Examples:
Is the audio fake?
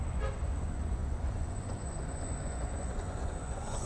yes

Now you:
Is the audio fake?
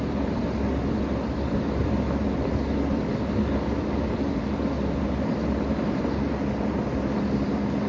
no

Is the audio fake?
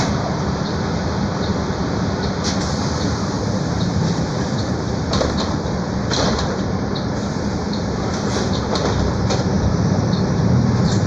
yes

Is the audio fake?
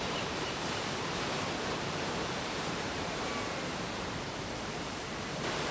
yes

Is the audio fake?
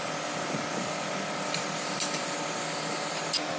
no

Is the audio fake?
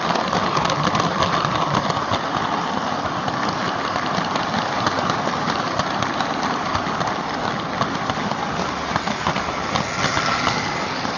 no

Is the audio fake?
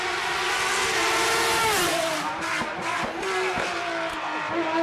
no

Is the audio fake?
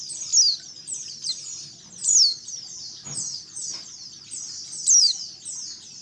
no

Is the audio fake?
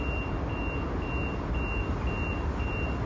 no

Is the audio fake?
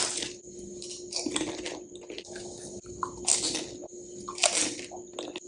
no